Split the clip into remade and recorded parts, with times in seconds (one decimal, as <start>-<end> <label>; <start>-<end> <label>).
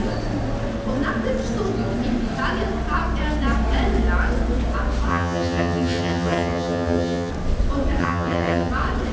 0.0-5.1 recorded; 5.1-7.3 remade; 7.3-8.0 recorded; 8.0-8.7 remade; 8.7-9.1 recorded